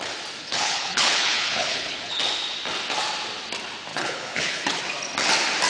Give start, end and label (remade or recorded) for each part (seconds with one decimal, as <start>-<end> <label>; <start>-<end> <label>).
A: 0.0-0.4 recorded; 0.4-2.2 remade; 2.2-3.9 recorded; 3.9-4.8 remade; 4.8-5.7 recorded